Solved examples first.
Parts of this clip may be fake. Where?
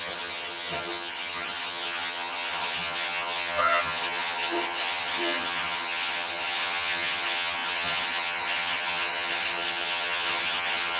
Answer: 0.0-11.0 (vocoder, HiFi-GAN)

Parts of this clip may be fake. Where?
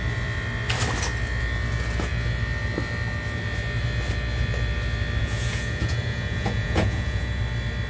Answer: 5.2-7.4 (vocoder, Vocos)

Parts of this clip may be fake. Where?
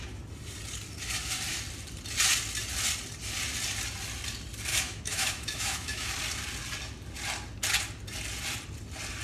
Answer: 4.7-6.1 (autoencoder, DAC-VAE)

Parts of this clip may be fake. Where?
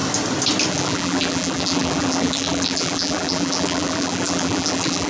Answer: 0.7-5.1 (vocoder, BigVGAN v2)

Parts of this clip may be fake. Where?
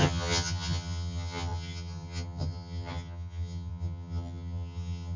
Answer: 0.0-5.2 (vocoder, HiFi-GAN)